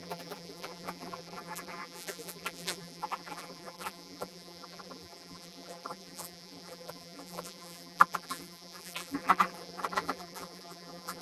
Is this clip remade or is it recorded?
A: remade